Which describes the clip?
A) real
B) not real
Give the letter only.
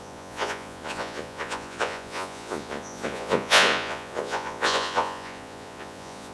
B